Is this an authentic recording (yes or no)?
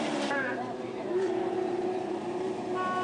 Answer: no